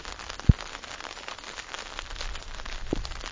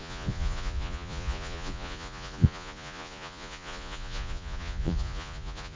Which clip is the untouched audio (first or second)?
first